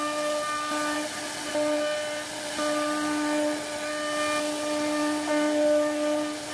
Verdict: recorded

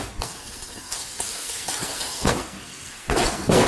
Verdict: remade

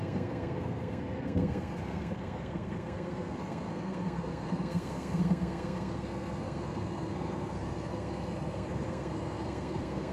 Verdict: remade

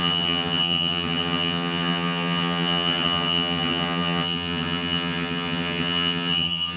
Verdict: remade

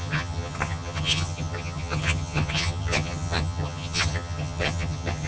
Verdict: remade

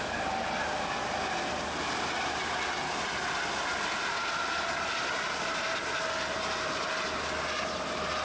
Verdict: recorded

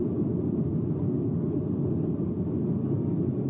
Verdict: recorded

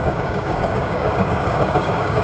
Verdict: remade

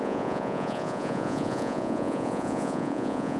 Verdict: remade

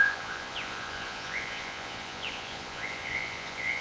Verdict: remade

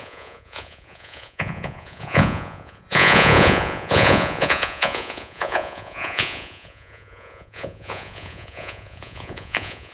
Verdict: remade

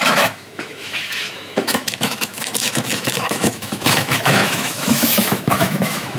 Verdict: remade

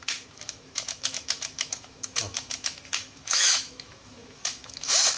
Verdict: remade